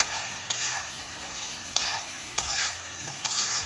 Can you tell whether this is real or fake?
fake